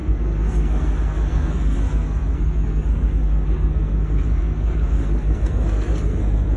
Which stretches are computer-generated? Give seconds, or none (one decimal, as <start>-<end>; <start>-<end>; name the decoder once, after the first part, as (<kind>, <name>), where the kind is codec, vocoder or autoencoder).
0.0-6.6 (codec, SNAC)